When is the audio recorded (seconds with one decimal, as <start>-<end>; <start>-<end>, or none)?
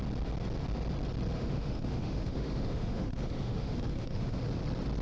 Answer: 0.0-1.4; 4.4-5.0